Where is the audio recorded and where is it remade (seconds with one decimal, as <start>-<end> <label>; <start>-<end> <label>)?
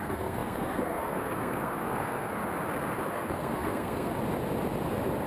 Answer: 0.0-2.4 remade; 2.4-3.1 recorded; 3.1-4.1 remade; 4.1-5.3 recorded